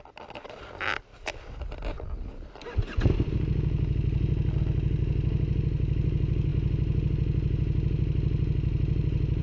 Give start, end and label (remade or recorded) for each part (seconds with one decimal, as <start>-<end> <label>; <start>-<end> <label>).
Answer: 0.0-9.4 recorded